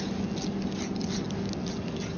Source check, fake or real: real